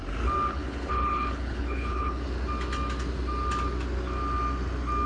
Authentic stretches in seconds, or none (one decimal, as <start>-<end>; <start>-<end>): 0.0-0.5; 2.2-5.1